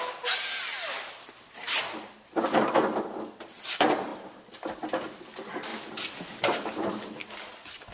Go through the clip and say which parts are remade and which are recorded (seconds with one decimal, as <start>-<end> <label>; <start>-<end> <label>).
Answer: 0.0-7.9 recorded